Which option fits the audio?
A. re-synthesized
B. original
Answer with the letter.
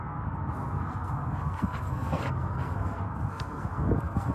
A